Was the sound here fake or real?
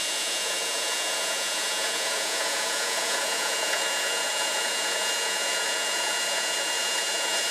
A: fake